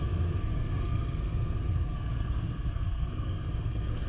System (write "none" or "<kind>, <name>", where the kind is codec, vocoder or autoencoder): codec, SNAC